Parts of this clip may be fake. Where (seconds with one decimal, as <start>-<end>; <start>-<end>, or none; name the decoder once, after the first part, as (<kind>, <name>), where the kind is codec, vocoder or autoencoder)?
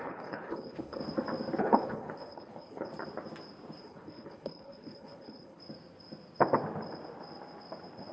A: 0.0-1.0 (codec, HILCodec); 1.6-2.9; 3.8-5.6